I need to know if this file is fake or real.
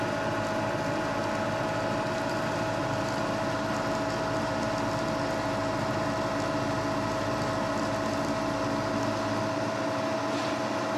real